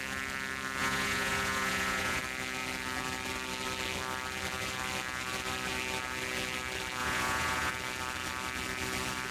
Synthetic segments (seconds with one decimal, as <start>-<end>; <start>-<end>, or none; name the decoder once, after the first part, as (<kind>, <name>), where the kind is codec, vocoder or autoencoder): 0.8-2.2 (vocoder, Vocos); 7.0-7.7